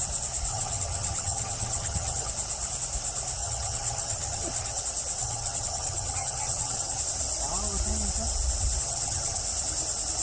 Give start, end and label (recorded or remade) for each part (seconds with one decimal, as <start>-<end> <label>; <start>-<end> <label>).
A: 0.0-0.5 recorded; 0.5-2.3 remade; 2.3-3.4 recorded; 3.4-4.8 remade; 4.8-5.2 recorded; 5.2-7.0 remade; 7.0-8.8 recorded; 8.8-9.4 remade; 9.4-10.2 recorded